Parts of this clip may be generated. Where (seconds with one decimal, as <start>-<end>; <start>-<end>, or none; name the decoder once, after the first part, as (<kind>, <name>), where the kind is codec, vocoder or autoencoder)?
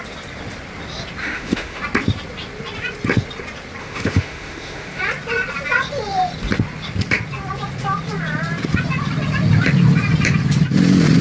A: 1.2-1.8 (autoencoder, DAC-VAE); 3.8-5.0